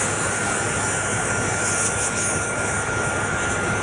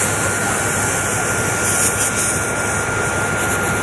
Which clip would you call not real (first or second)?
first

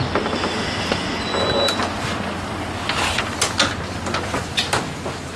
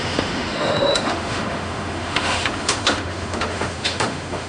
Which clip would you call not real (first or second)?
second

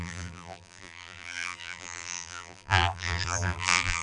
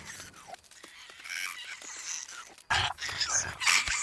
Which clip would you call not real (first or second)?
first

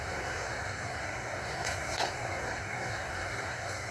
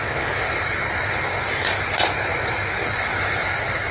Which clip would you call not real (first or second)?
first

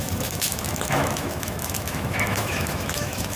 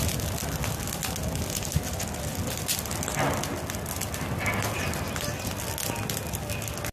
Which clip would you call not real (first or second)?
first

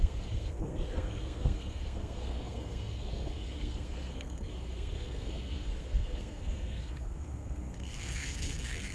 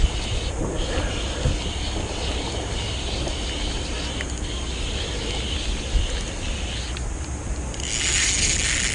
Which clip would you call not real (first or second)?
first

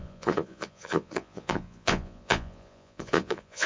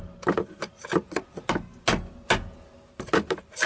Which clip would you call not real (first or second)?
first